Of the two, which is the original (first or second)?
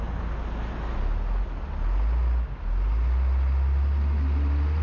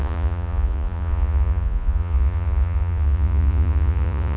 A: first